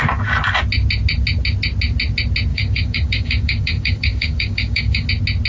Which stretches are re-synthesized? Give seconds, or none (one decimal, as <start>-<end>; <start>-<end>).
2.5-5.1